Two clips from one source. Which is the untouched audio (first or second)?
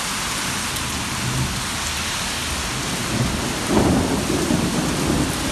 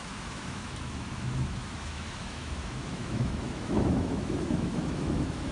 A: first